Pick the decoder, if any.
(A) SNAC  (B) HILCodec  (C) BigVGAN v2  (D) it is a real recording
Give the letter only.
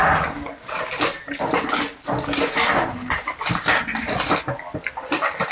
D